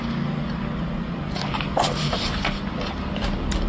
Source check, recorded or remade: recorded